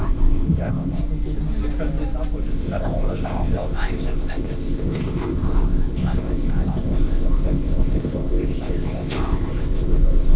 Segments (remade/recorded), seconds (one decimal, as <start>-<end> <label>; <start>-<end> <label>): 0.0-1.0 remade; 1.0-2.5 recorded; 2.5-10.4 remade

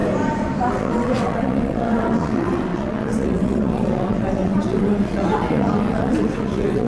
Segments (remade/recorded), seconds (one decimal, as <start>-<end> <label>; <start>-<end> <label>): 0.0-0.7 recorded; 0.7-6.9 remade

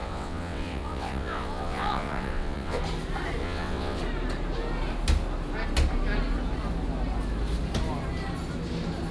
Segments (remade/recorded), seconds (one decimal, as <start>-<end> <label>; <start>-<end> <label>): 0.0-2.8 remade; 2.8-3.4 recorded; 3.4-4.0 remade; 4.0-9.1 recorded

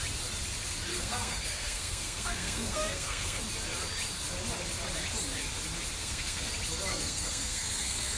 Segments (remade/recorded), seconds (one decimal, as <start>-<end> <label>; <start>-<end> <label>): 0.0-0.9 recorded; 0.9-3.4 remade; 3.4-6.0 recorded; 6.0-6.5 remade; 6.5-6.9 recorded; 6.9-8.2 remade

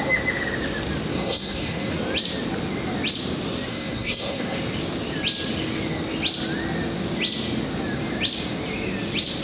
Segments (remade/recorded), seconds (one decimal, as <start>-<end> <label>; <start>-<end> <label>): 0.0-1.1 recorded; 1.1-1.9 remade; 1.9-3.7 recorded; 3.7-4.6 remade; 4.6-9.4 recorded

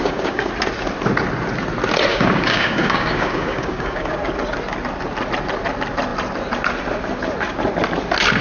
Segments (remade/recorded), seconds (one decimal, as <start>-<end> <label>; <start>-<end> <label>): 0.0-0.5 remade; 0.5-2.1 recorded; 2.1-4.1 remade; 4.1-8.4 recorded

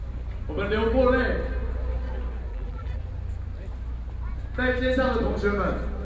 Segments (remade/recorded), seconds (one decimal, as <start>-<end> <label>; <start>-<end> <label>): 0.0-2.5 recorded; 2.5-3.0 remade; 3.0-6.0 recorded